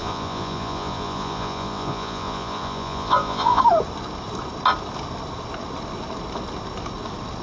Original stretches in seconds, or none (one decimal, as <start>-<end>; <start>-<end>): 3.6-7.4